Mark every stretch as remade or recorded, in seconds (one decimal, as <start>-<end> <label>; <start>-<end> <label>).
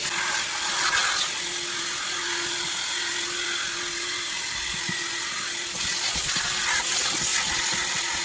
0.0-8.2 recorded